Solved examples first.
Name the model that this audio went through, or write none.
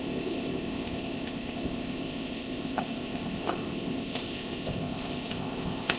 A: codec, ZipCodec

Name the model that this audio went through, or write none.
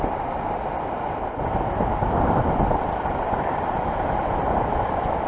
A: none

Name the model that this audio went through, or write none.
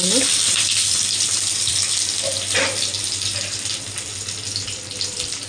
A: none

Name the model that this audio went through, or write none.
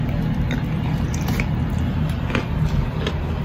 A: none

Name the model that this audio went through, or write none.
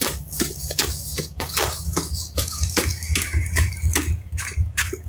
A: codec, DAC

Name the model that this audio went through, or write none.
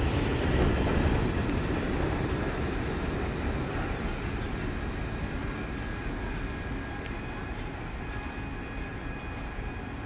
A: none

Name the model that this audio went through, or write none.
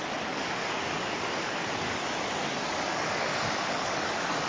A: codec, DAC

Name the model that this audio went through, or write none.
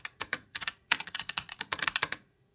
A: vocoder, Vocos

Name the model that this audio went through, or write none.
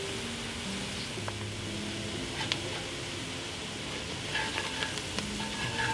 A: none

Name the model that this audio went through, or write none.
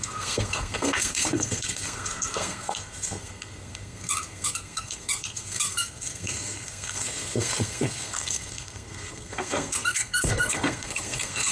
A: codec, SNAC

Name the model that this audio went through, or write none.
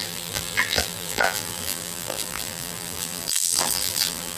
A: vocoder, BigVGAN v2